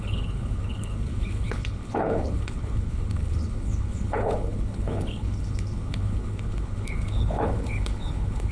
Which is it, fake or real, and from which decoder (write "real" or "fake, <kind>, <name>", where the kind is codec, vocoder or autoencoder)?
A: fake, codec, HILCodec